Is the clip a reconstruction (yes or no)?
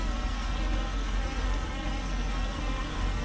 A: yes